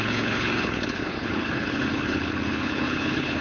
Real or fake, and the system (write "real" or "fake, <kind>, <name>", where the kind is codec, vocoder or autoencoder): fake, codec, HILCodec